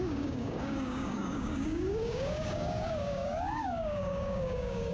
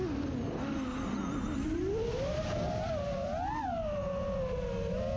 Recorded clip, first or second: second